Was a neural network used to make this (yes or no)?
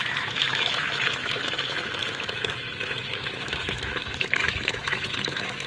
yes